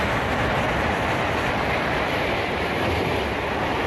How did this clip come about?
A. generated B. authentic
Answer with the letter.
B